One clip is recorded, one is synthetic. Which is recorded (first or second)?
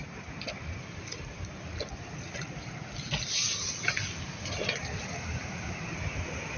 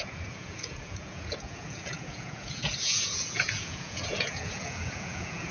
first